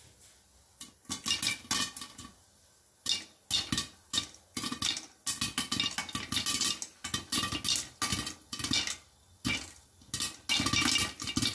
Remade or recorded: recorded